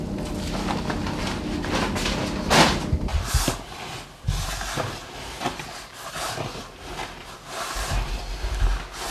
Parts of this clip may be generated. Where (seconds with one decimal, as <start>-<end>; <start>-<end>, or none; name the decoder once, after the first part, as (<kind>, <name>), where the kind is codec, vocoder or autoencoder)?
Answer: none